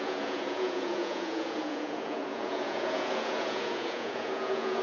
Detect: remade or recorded remade